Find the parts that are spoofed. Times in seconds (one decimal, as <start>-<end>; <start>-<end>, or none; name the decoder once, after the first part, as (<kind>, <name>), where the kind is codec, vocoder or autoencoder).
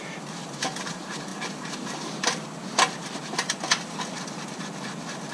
none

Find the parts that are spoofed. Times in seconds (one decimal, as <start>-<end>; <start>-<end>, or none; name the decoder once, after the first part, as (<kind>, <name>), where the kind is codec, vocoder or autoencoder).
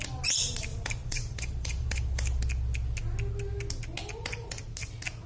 0.7-2.4 (vocoder, BigVGAN v2); 4.0-4.6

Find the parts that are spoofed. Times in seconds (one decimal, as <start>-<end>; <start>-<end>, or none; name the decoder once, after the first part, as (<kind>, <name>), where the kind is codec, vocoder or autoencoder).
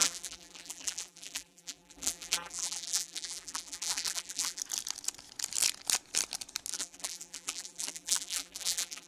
0.0-4.6 (vocoder, BigVGAN v2); 6.7-9.1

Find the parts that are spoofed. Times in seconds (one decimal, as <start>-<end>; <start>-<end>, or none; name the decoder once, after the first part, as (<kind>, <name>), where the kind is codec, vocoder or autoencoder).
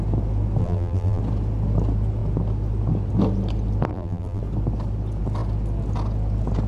0.6-1.2 (vocoder, BigVGAN v2); 3.9-4.4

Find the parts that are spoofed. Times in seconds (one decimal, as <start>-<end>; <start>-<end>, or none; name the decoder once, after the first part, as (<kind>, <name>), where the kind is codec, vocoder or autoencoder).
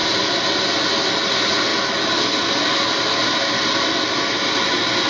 none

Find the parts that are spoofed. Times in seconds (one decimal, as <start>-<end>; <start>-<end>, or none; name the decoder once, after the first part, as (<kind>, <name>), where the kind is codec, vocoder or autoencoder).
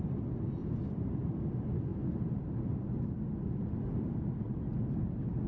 0.6-1.1 (vocoder, BigVGAN v2); 1.9-2.8; 4.7-5.5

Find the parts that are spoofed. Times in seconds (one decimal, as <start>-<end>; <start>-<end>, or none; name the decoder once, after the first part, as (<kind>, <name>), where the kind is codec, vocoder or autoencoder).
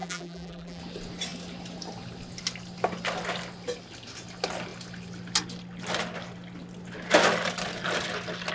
0.0-0.8 (vocoder, BigVGAN v2)